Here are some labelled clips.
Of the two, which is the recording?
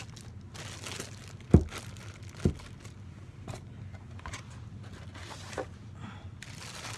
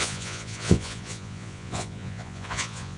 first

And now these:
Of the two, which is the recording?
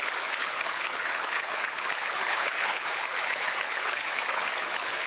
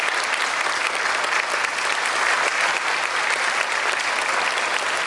second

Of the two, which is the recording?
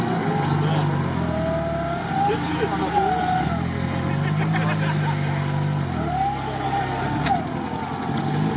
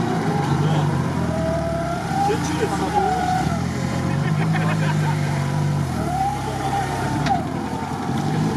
first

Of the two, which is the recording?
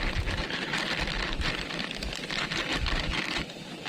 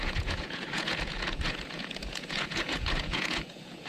first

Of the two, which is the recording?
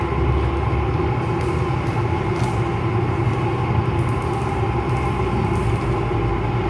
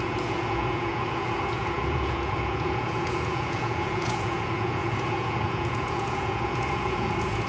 first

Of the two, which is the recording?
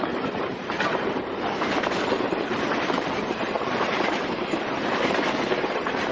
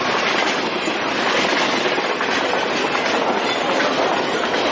second